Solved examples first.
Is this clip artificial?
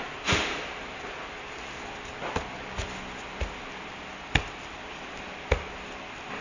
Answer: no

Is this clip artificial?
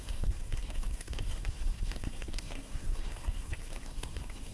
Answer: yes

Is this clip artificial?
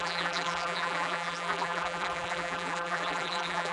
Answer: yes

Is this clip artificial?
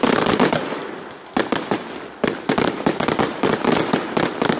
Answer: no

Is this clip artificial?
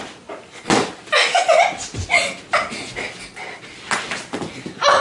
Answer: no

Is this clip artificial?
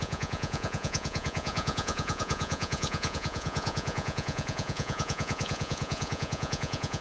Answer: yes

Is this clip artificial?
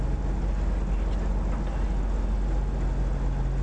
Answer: no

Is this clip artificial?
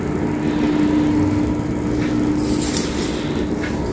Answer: no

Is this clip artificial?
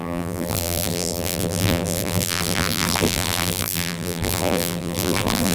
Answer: yes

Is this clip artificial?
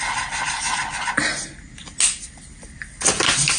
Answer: no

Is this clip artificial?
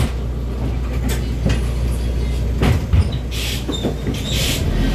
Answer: no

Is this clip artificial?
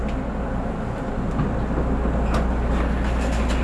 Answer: no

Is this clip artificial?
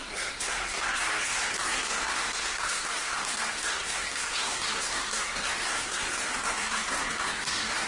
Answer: yes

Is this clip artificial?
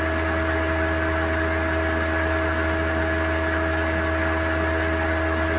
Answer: no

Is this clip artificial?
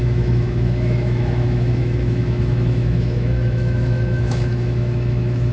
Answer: yes